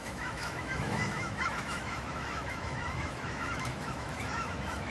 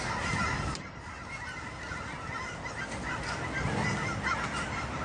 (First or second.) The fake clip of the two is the first